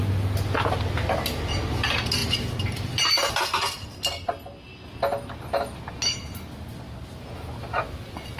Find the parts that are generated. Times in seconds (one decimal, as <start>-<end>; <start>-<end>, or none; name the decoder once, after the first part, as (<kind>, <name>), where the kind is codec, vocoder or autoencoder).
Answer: none